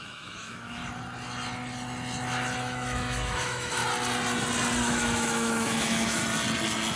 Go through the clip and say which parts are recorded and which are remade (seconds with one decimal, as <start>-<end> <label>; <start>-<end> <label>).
0.0-0.8 remade; 0.8-2.6 recorded; 2.6-3.8 remade; 3.8-4.8 recorded; 4.8-6.2 remade; 6.2-7.0 recorded